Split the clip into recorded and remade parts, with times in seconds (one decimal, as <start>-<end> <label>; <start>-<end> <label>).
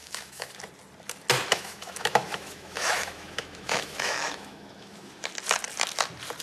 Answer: 0.0-0.5 remade; 0.5-1.5 recorded; 1.5-5.3 remade; 5.3-6.4 recorded